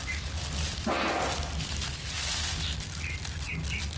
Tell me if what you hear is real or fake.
real